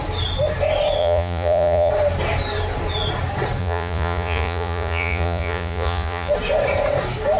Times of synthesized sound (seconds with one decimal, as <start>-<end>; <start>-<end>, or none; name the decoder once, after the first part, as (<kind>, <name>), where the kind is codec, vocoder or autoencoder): 1.0-1.9 (vocoder, Vocos); 3.6-6.3